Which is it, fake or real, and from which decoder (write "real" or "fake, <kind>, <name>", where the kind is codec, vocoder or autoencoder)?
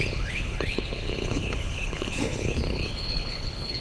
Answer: fake, codec, HILCodec